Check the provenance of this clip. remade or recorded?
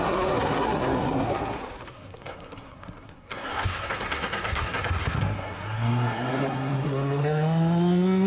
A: remade